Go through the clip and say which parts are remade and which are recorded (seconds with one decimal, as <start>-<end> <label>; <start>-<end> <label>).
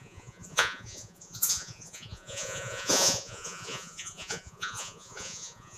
0.0-5.8 remade